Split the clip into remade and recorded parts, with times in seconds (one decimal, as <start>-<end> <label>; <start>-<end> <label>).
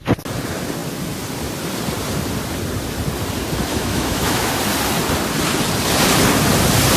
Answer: 0.0-3.7 recorded; 3.7-4.5 remade; 4.5-7.0 recorded